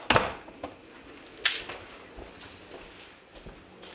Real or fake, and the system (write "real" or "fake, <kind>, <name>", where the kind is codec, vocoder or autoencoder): real